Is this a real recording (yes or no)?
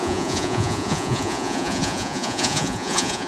no